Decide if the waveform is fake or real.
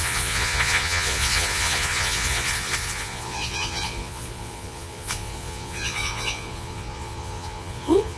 fake